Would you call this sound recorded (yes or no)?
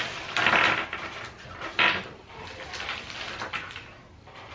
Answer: yes